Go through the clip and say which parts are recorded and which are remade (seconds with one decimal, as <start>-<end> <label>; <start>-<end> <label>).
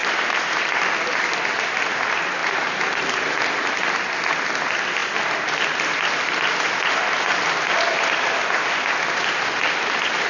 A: 0.0-0.7 remade; 0.7-2.4 recorded; 2.4-3.1 remade; 3.1-10.3 recorded